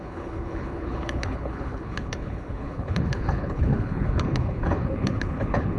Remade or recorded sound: remade